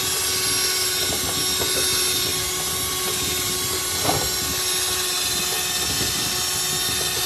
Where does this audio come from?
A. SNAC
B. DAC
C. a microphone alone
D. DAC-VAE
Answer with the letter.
C